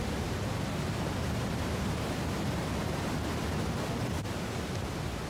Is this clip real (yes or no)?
yes